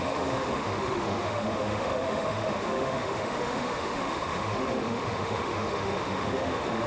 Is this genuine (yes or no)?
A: no